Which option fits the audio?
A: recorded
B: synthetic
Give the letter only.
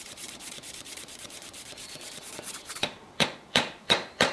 B